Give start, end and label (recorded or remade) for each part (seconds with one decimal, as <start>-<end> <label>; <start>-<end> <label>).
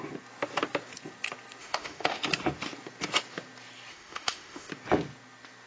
0.0-1.6 recorded; 1.6-2.2 remade; 2.2-3.9 recorded; 3.9-4.7 remade; 4.7-5.7 recorded